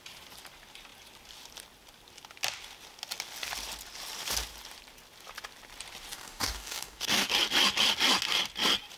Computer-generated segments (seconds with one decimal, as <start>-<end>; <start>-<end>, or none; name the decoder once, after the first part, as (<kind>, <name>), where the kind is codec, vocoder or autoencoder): 6.1-7.3 (codec, DAC)